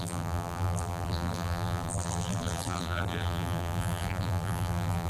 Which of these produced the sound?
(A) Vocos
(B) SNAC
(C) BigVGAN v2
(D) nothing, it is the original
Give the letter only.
C